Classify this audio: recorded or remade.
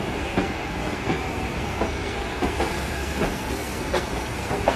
remade